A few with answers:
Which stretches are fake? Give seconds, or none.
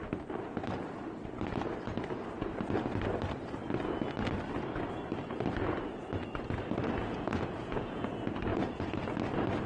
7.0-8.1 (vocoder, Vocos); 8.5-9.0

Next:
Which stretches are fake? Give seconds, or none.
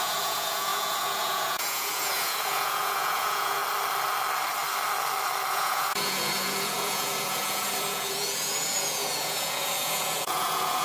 0.0-3.6 (vocoder, Vocos); 5.5-10.8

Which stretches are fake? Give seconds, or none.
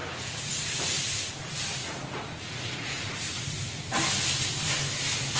0.0-1.3 (vocoder, Vocos); 1.8-3.5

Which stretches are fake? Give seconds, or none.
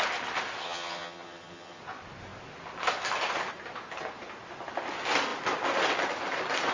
0.6-1.8 (vocoder, HiFi-GAN)